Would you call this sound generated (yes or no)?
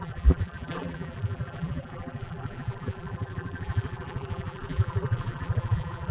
yes